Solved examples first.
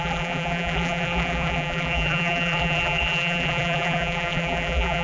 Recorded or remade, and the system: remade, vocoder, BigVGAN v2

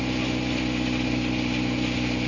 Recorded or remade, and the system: recorded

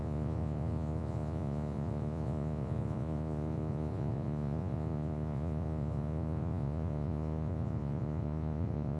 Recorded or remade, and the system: remade, vocoder, Vocos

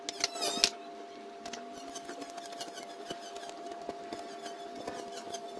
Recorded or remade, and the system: recorded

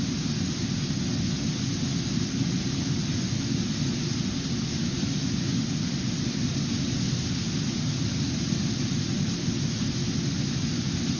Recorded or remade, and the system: recorded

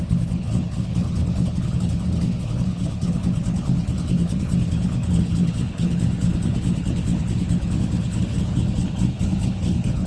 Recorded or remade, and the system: remade, codec, HILCodec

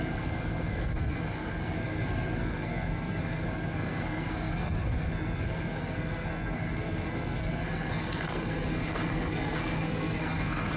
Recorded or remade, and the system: remade, codec, SNAC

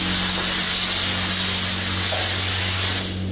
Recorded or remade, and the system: recorded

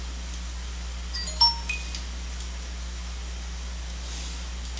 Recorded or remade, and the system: recorded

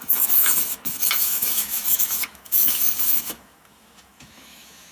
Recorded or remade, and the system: remade, autoencoder, DAC-VAE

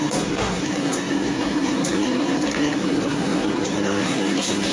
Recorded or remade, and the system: remade, codec, SNAC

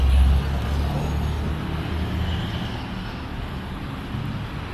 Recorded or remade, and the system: recorded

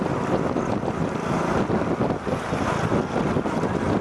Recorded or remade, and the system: recorded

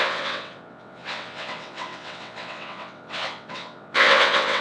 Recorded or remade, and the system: remade, vocoder, WaveNeXt